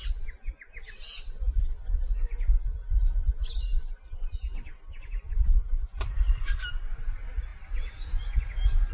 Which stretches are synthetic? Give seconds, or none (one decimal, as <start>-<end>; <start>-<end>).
7.5-8.2